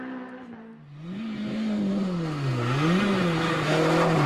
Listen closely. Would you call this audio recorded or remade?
recorded